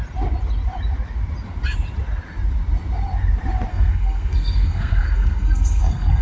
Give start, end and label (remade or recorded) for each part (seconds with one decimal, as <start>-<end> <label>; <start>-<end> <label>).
0.0-3.7 recorded; 3.7-6.2 remade

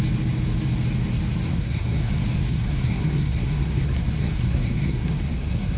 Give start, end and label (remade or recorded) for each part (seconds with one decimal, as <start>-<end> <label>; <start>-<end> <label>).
0.0-1.5 recorded; 1.5-2.1 remade; 2.1-2.5 recorded; 2.5-5.8 remade

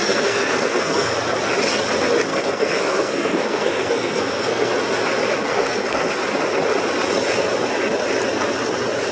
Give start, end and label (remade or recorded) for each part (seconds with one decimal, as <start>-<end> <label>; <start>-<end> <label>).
0.0-1.1 remade; 1.1-2.3 recorded; 2.3-4.7 remade; 4.7-5.5 recorded; 5.5-6.1 remade; 6.1-9.1 recorded

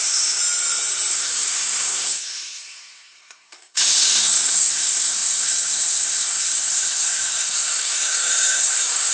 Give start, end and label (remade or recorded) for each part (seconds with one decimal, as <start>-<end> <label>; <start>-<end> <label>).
0.0-0.4 remade; 0.4-1.1 recorded; 1.1-9.1 remade

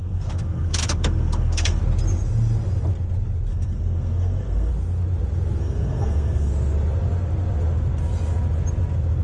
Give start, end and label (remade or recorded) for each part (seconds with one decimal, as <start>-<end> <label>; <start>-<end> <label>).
0.0-1.8 remade; 1.8-3.5 recorded; 3.5-4.7 remade; 4.7-5.6 recorded; 5.6-6.5 remade; 6.5-9.2 recorded